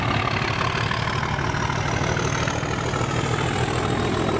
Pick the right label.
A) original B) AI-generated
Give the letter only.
A